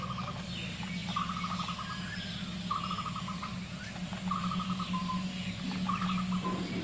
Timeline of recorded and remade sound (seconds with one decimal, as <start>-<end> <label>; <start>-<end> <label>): 0.0-6.8 recorded